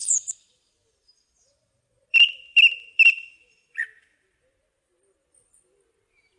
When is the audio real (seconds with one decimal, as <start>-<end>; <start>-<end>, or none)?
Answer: 1.5-6.4